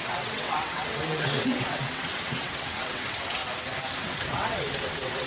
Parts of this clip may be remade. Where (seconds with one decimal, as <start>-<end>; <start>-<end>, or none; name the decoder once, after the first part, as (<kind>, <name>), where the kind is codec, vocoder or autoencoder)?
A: 0.0-3.4 (vocoder, WaveNeXt); 4.0-5.3